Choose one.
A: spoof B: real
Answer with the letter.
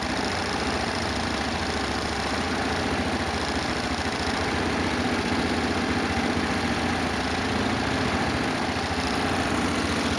B